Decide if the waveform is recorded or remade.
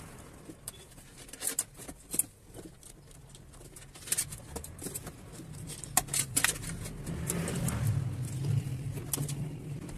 recorded